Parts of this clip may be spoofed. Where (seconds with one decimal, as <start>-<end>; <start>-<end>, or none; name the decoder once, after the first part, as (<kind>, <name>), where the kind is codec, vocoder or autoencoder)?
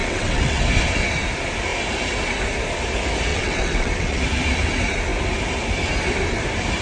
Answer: 0.0-0.6 (vocoder, WaveNeXt); 3.3-4.2